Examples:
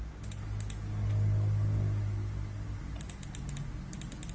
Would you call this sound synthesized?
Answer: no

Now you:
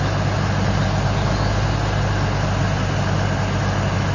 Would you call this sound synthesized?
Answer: no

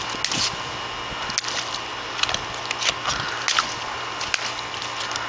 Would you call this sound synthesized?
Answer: no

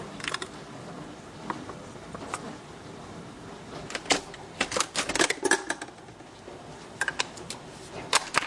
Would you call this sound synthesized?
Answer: no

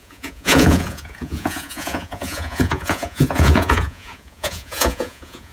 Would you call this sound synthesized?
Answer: yes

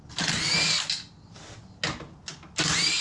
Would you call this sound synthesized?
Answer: no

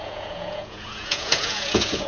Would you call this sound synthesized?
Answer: yes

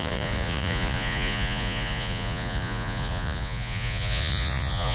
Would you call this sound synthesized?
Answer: yes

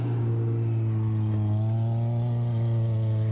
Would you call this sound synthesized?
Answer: no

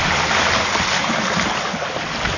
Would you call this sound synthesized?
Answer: no